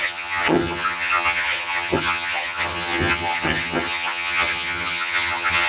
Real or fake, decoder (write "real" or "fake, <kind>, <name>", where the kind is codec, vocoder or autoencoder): fake, vocoder, HiFi-GAN